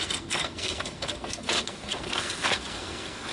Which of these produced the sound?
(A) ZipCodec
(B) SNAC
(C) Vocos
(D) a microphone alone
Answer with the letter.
B